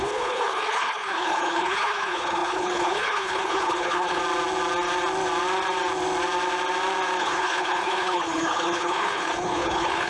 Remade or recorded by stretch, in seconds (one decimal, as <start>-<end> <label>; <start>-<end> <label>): 0.0-4.2 remade; 4.2-7.2 recorded; 7.2-10.1 remade